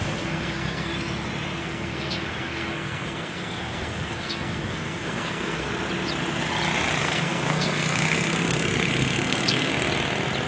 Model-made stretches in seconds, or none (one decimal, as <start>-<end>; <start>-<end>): 0.0-0.9; 1.6-5.7; 7.0-9.7